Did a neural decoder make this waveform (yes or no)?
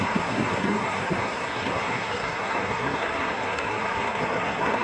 yes